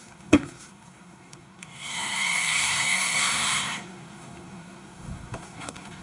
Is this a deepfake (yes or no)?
yes